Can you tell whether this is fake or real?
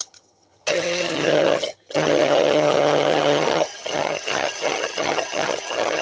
fake